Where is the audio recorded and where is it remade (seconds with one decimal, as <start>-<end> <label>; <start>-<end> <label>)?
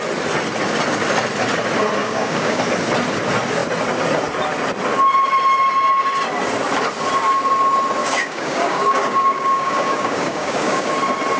0.0-2.0 recorded; 2.0-2.6 remade; 2.6-8.0 recorded; 8.0-10.9 remade; 10.9-11.4 recorded